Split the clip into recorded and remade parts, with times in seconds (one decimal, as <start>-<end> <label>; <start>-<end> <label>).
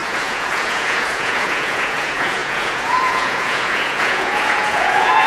0.0-5.3 remade